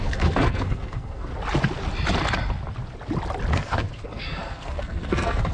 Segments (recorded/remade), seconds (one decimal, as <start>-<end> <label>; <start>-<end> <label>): 0.0-1.3 remade; 1.3-3.5 recorded; 3.5-5.5 remade